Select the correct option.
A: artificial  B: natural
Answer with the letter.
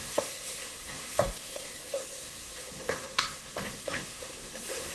A